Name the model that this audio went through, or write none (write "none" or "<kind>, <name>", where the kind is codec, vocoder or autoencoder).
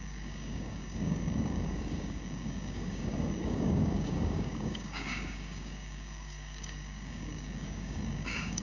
codec, DAC